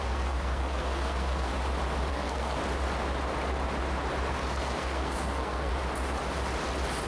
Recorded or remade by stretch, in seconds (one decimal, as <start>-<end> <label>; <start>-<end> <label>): 0.0-1.5 remade; 1.5-2.1 recorded; 2.1-2.6 remade; 2.6-4.3 recorded; 4.3-5.7 remade; 5.7-7.1 recorded